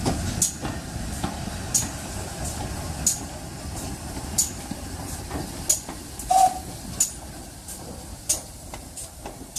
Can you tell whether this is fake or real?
real